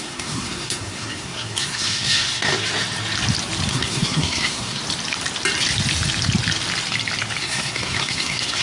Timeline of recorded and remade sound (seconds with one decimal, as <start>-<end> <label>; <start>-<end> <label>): 0.0-2.5 remade; 2.5-3.7 recorded; 3.7-4.8 remade; 4.8-7.4 recorded; 7.4-8.6 remade